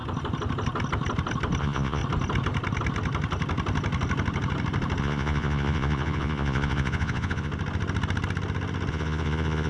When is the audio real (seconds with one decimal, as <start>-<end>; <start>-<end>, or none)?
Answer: 0.0-1.6; 2.0-5.0; 7.5-8.9